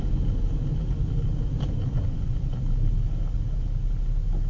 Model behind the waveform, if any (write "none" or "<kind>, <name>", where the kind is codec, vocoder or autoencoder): none